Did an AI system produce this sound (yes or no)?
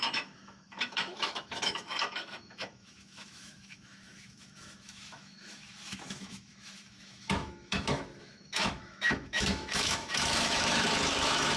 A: yes